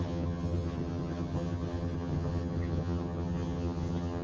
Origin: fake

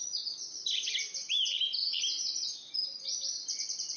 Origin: real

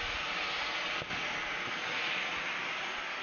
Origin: real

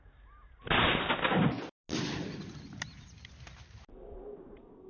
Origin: real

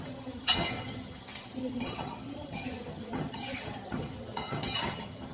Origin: fake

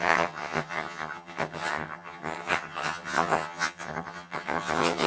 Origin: fake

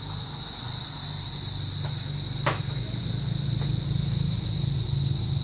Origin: real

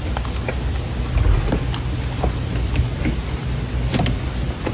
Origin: real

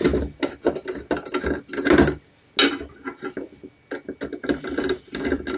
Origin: real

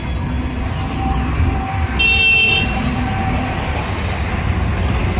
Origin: real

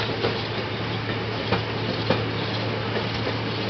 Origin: real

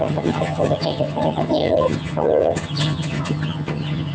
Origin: fake